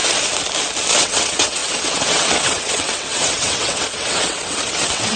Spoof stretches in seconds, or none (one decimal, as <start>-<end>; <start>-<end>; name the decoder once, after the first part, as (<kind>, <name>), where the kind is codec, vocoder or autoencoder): 1.0-5.2 (vocoder, WaveNeXt)